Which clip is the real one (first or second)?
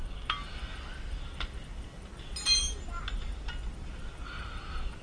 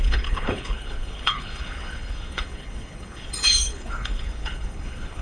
first